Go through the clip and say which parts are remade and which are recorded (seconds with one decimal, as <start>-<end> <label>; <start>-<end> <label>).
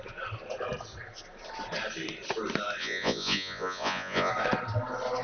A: 0.0-2.8 recorded; 2.8-4.3 remade; 4.3-5.2 recorded